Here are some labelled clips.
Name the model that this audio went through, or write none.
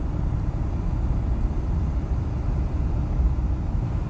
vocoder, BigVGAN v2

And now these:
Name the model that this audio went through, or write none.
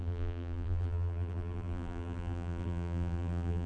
vocoder, BigVGAN v2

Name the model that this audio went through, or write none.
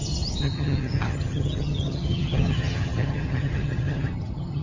vocoder, HiFi-GAN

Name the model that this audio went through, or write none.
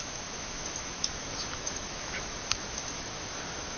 autoencoder, DAC-VAE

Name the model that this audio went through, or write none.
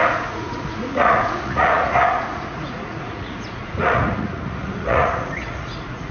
vocoder, Vocos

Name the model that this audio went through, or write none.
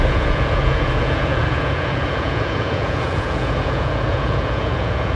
vocoder, Vocos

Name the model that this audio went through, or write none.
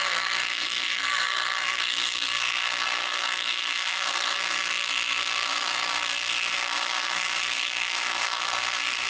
codec, SNAC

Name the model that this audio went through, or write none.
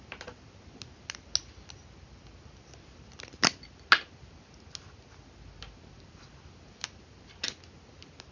none